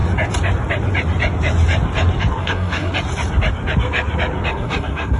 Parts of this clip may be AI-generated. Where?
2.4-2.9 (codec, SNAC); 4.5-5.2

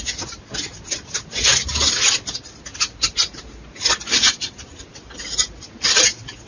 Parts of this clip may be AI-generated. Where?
none

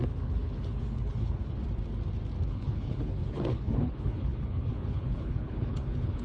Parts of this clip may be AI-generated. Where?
0.0-1.6 (codec, HILCodec); 2.5-6.2

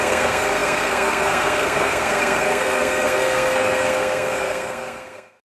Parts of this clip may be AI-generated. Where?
0.0-5.5 (codec, SNAC)

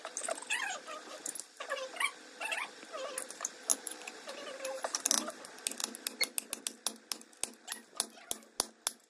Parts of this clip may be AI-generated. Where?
3.7-5.0 (vocoder, BigVGAN v2)

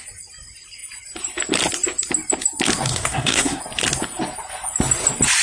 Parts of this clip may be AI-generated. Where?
2.9-3.6 (codec, SNAC)

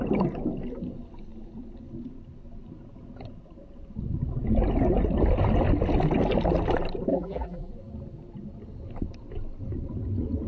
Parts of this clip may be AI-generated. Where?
7.1-7.7 (vocoder, BigVGAN v2)

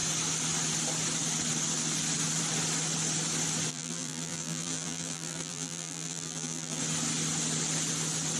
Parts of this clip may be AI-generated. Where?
3.7-6.8 (vocoder, BigVGAN v2)